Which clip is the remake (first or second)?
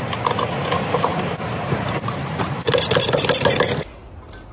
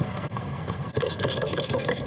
second